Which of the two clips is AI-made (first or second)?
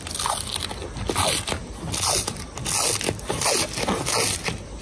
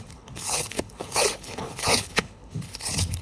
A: second